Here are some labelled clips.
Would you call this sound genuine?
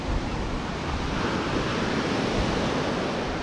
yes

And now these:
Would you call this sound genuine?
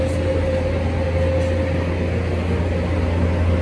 yes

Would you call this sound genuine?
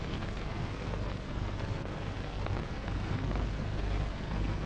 no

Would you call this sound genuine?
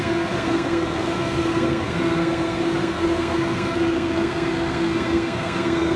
no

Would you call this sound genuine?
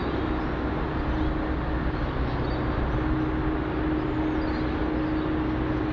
yes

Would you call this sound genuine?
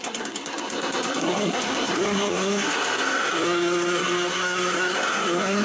no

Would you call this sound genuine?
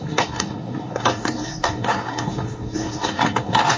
no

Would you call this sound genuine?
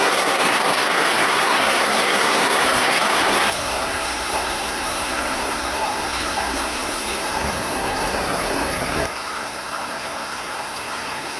no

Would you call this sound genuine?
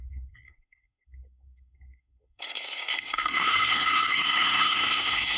no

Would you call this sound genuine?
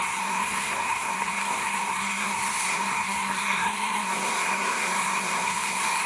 no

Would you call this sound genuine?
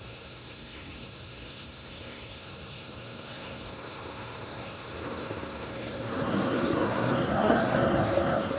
no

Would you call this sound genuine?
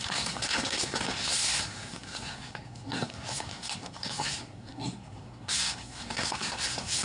no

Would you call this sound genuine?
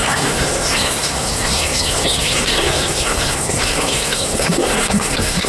no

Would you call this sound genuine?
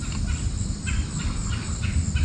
yes